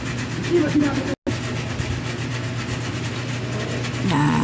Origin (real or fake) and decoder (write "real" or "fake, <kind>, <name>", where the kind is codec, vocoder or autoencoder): real